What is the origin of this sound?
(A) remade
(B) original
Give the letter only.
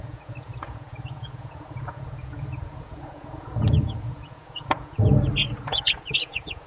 A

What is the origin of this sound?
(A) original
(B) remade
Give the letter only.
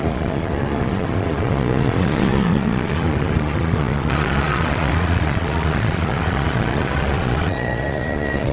B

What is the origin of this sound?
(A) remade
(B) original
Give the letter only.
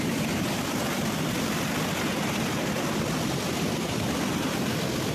A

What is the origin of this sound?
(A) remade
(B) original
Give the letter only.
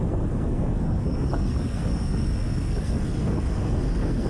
A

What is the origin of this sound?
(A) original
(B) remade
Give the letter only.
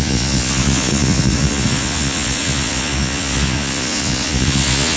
B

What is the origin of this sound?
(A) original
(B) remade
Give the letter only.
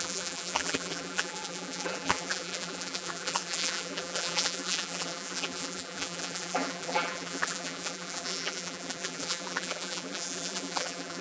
B